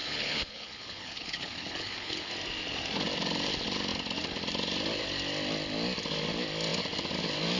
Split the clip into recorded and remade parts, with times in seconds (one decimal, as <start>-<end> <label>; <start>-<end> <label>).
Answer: 0.0-2.3 remade; 2.3-7.6 recorded

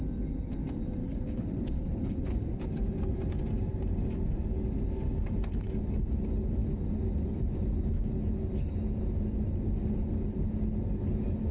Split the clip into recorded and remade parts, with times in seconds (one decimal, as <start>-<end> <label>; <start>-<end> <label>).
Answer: 0.0-1.0 recorded; 1.0-2.4 remade; 2.4-11.5 recorded

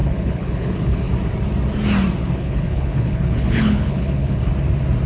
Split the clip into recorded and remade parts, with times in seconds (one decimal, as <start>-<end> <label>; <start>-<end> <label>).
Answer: 0.0-1.1 remade; 1.1-2.2 recorded; 2.2-4.5 remade; 4.5-5.1 recorded

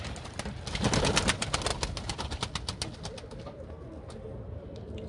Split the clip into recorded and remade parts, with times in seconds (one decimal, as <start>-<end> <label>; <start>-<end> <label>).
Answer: 0.0-5.1 recorded